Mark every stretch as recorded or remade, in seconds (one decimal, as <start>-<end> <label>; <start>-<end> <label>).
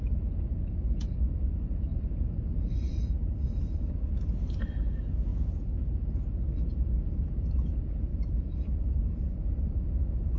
0.0-1.9 recorded; 1.9-4.8 remade; 4.8-8.1 recorded; 8.1-9.8 remade; 9.8-10.4 recorded